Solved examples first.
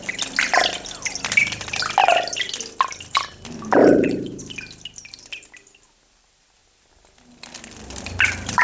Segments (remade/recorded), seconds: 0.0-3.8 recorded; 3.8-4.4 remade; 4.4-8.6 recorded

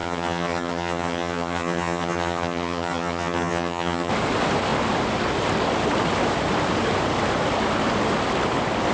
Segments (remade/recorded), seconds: 0.0-4.1 remade; 4.1-8.9 recorded

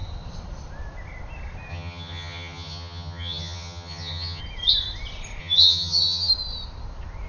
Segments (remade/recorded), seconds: 0.0-1.7 recorded; 1.7-4.4 remade; 4.4-5.4 recorded; 5.4-6.3 remade; 6.3-7.3 recorded

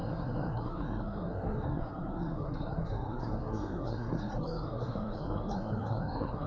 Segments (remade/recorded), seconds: 0.0-6.5 remade

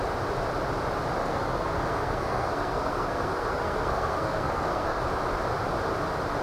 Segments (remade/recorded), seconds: 0.0-1.2 recorded; 1.2-5.0 remade; 5.0-6.4 recorded

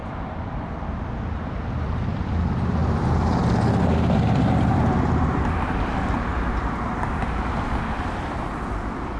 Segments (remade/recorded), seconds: 0.0-6.3 remade; 6.3-7.7 recorded; 7.7-9.2 remade